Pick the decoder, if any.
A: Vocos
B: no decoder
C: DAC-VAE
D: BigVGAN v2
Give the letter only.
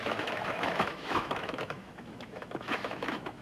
C